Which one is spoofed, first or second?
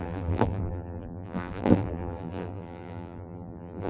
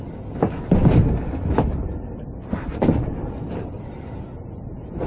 first